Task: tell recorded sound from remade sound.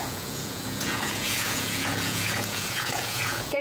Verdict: remade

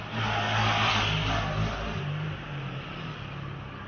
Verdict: recorded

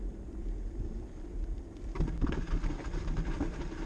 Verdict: remade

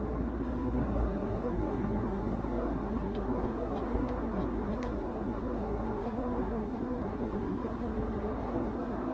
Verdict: remade